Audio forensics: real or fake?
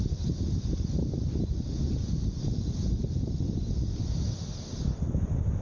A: real